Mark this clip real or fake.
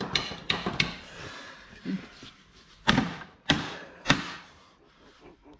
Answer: fake